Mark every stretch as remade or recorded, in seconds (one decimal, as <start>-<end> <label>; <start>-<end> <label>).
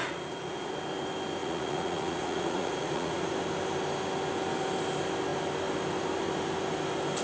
0.0-0.7 remade; 0.7-1.4 recorded; 1.4-3.2 remade; 3.2-7.2 recorded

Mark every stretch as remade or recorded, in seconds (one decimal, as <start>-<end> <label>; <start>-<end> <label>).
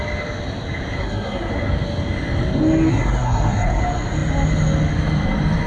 0.0-1.0 recorded; 1.0-1.5 remade; 1.5-2.9 recorded; 2.9-3.8 remade; 3.8-5.7 recorded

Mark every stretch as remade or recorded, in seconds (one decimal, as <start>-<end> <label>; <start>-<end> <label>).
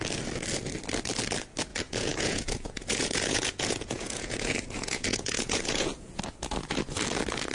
0.0-1.7 recorded; 1.7-6.2 remade; 6.2-7.5 recorded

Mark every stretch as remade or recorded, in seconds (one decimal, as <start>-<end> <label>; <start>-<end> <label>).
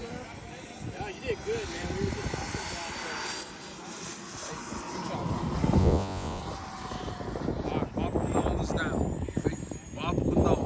0.0-5.8 recorded; 5.8-6.4 remade; 6.4-10.7 recorded